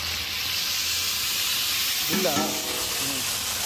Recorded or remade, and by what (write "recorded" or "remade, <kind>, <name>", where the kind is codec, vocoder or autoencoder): recorded